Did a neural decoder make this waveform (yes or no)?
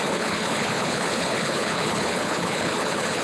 yes